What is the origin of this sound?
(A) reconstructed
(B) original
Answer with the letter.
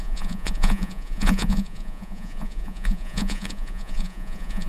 A